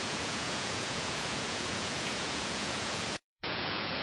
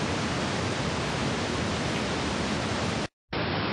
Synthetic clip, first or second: first